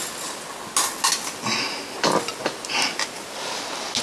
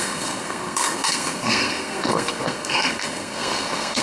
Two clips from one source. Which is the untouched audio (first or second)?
first